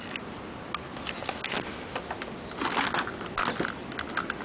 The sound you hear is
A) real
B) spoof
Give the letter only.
A